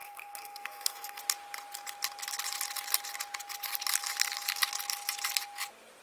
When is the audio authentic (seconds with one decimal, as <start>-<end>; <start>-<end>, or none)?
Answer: 1.2-6.0